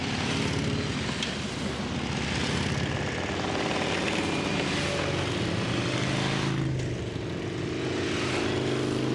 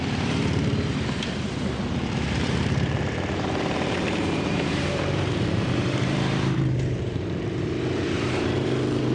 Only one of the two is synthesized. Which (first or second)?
second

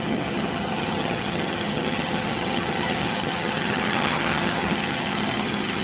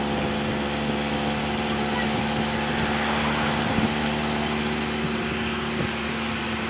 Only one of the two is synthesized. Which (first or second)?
first